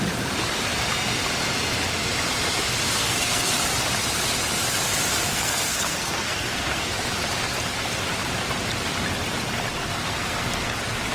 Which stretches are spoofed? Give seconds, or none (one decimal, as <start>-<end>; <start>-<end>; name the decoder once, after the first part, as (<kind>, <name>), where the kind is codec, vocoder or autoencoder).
3.0-3.5 (codec, SNAC); 5.3-6.9; 10.0-10.7